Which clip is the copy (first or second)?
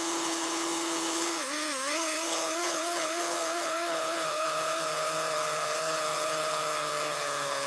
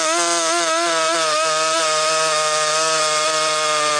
first